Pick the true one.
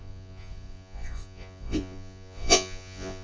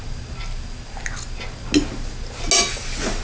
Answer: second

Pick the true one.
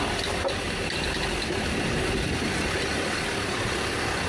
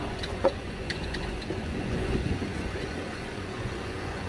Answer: first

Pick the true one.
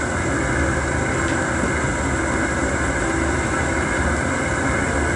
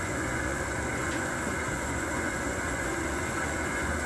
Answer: first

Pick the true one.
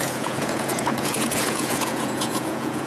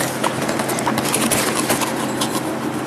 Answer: second